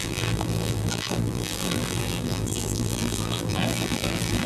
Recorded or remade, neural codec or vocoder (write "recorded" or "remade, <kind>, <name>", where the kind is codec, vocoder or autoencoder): remade, vocoder, BigVGAN v2